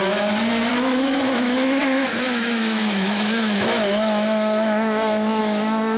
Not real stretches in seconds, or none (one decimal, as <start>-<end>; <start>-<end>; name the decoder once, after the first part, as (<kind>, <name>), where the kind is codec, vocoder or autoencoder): 0.7-6.0 (autoencoder, DAC-VAE)